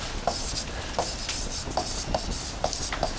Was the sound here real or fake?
real